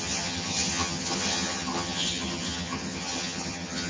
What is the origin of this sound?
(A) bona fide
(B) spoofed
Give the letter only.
B